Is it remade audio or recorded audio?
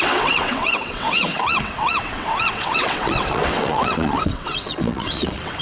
remade